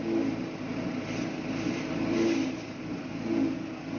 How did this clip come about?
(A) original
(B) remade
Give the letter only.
A